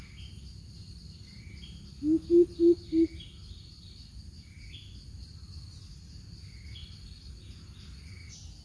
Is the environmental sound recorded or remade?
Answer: recorded